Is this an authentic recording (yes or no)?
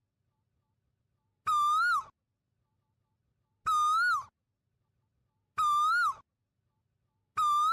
yes